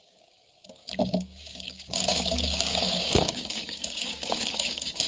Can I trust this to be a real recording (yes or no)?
no